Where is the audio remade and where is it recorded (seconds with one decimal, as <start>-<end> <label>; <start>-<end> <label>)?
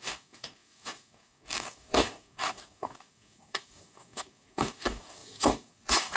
0.0-6.2 remade